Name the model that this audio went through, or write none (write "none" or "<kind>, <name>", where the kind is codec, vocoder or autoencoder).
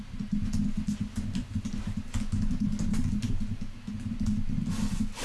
none